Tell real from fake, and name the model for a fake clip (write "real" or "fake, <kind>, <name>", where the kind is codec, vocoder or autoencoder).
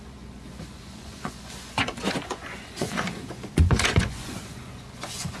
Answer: fake, vocoder, Vocos